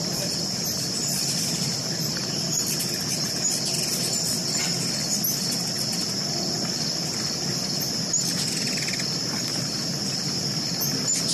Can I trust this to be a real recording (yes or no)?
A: yes